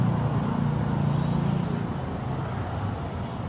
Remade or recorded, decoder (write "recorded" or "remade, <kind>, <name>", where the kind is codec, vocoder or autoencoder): recorded